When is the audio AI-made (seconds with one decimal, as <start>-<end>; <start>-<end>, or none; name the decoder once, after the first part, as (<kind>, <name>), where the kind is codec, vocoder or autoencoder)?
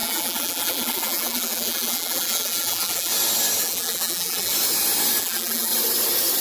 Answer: 0.0-3.1 (vocoder, BigVGAN v2); 3.6-4.5; 5.2-5.7